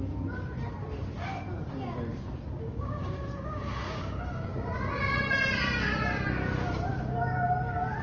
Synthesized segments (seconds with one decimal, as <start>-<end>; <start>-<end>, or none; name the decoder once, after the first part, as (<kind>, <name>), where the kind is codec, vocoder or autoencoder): 2.7-4.5 (codec, DAC)